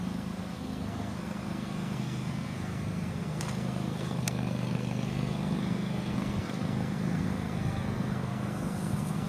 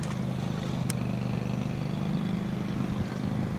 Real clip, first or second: second